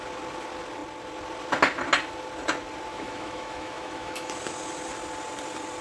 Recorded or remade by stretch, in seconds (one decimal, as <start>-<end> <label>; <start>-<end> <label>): 0.0-2.9 recorded; 2.9-4.3 remade; 4.3-5.8 recorded